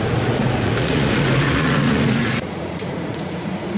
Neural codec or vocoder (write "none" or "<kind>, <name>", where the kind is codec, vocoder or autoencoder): vocoder, Vocos